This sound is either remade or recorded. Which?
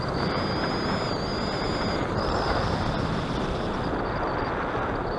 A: recorded